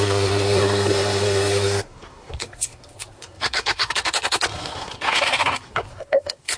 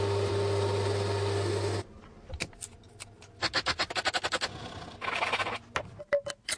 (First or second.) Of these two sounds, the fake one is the first